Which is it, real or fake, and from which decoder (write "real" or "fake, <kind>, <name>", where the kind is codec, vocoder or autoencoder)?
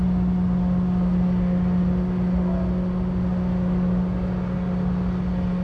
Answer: real